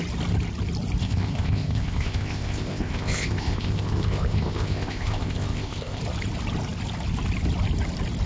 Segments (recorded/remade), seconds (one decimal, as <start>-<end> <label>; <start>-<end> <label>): 0.0-1.0 recorded; 1.0-6.0 remade; 6.0-8.3 recorded